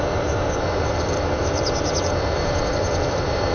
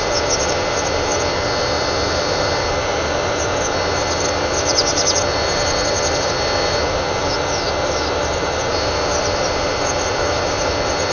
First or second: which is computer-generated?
first